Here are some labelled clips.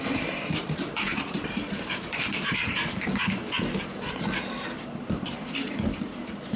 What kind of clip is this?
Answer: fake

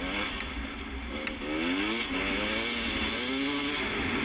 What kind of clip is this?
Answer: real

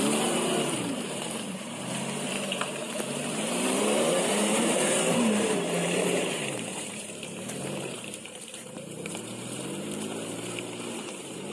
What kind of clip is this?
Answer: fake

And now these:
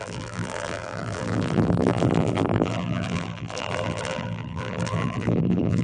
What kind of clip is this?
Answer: fake